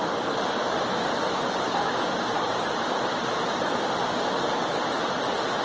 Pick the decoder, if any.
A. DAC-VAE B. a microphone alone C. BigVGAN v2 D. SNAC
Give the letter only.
C